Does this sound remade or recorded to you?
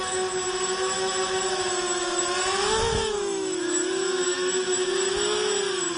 remade